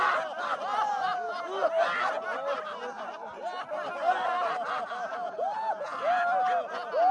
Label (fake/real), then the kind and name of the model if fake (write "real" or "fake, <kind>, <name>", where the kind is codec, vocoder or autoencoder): real